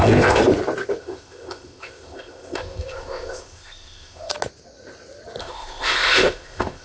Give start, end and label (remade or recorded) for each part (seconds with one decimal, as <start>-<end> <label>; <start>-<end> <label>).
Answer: 0.0-0.4 remade; 0.4-1.0 recorded; 1.0-4.3 remade; 4.3-5.4 recorded; 5.4-6.8 remade